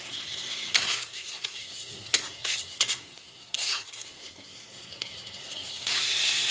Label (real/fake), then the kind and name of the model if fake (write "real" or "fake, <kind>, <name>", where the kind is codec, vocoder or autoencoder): fake, codec, SNAC